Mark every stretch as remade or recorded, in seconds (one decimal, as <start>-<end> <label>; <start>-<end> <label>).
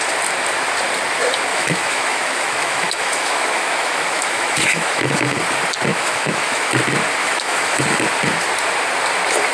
0.0-1.5 recorded; 1.5-5.4 remade; 5.4-5.9 recorded; 5.9-6.7 remade; 6.7-7.2 recorded; 7.2-7.8 remade; 7.8-9.5 recorded